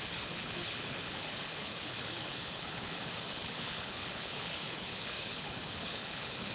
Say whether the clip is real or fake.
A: fake